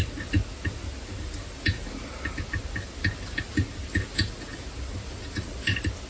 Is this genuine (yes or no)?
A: yes